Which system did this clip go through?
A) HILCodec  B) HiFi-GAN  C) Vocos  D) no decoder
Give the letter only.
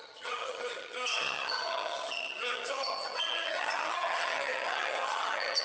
B